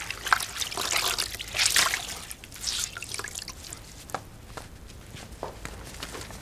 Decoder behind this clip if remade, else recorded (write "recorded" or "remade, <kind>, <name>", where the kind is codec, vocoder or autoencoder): recorded